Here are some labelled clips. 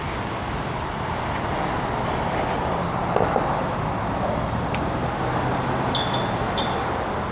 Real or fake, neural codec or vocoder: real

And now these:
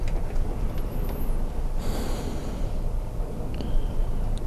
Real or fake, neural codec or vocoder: real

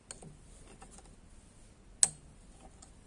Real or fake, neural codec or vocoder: real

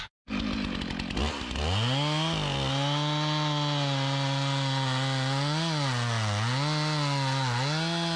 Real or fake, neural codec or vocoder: real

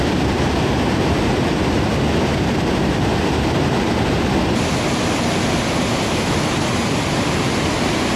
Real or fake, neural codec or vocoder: real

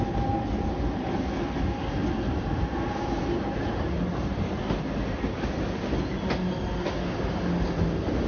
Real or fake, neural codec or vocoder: real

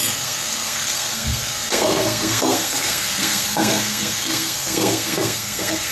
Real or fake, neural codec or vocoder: fake, codec, SNAC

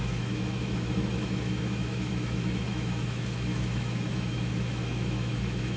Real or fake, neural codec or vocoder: fake, autoencoder, DAC-VAE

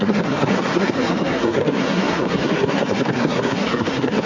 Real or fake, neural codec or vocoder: fake, codec, SNAC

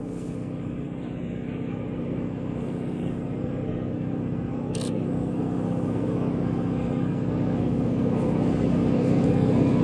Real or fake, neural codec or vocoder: fake, codec, SNAC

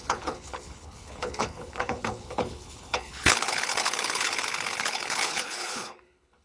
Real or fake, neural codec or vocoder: fake, codec, HILCodec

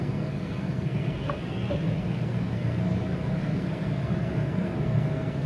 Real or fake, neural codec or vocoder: fake, codec, SNAC